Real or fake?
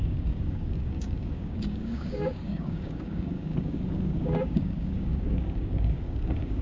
fake